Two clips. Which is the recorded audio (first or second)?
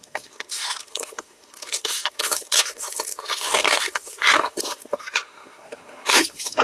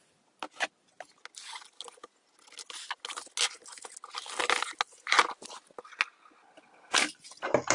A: second